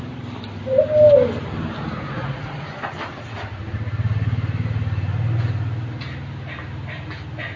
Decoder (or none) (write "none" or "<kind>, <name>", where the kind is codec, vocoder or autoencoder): none